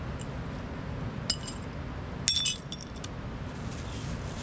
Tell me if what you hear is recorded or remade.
recorded